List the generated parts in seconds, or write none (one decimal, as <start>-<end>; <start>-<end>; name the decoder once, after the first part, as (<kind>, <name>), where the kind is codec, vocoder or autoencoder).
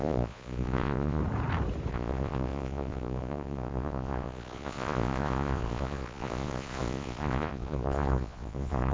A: 0.0-1.2 (vocoder, Vocos); 1.9-8.9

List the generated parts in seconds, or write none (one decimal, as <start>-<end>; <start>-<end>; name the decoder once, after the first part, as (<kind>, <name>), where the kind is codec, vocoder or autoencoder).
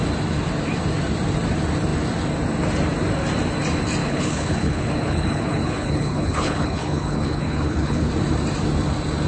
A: 4.0-8.1 (codec, HILCodec)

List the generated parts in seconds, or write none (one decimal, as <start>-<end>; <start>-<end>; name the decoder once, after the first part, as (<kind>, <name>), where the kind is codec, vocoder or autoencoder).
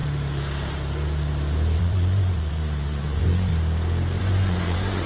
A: 1.8-3.5 (vocoder, Vocos); 4.2-5.1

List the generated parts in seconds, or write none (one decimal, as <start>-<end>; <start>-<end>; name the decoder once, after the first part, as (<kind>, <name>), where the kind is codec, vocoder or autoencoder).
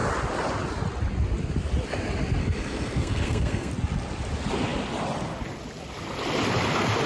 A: 2.4-3.7 (codec, SNAC)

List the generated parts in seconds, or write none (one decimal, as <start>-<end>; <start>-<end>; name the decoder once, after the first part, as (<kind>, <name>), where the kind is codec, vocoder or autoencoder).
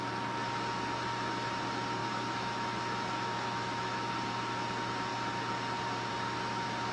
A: 2.0-4.1 (autoencoder, DAC-VAE)